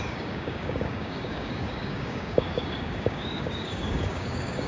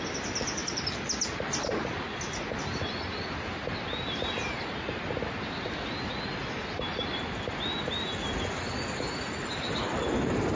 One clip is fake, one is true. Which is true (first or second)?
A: second